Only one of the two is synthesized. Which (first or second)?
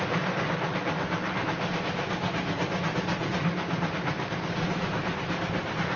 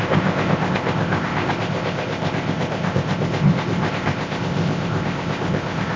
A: second